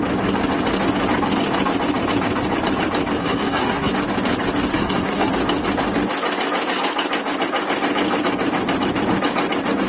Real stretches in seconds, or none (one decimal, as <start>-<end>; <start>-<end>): 0.0-3.2; 3.9-4.7; 5.3-9.9